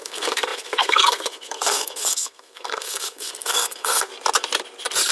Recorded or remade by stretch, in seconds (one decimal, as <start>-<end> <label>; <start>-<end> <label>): 0.0-4.1 remade; 4.1-5.1 recorded